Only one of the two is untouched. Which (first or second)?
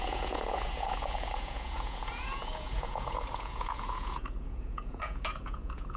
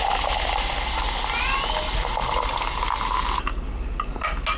second